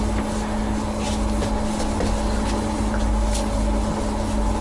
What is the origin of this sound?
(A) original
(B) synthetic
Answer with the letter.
A